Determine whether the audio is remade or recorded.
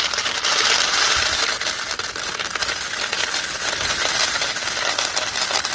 recorded